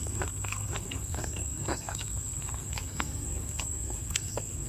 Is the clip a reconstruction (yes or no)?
yes